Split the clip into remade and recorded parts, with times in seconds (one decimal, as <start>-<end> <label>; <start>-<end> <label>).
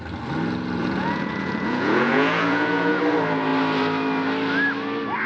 0.0-0.8 recorded; 0.8-3.0 remade; 3.0-5.3 recorded